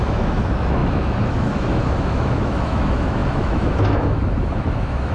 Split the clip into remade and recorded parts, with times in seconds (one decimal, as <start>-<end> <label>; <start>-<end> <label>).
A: 0.0-5.1 remade